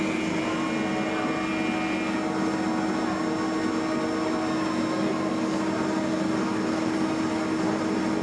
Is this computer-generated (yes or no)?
no